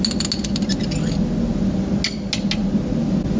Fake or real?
real